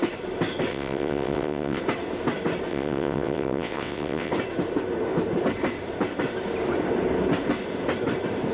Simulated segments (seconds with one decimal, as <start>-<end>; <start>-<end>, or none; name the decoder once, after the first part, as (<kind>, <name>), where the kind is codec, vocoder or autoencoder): 0.7-1.8 (vocoder, WaveNeXt); 2.7-4.3